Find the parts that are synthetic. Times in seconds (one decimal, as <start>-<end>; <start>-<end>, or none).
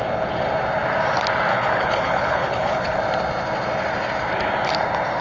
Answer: 1.5-3.0